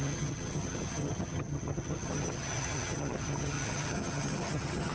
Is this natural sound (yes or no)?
no